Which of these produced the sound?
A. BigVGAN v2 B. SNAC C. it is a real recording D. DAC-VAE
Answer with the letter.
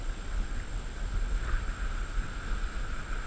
C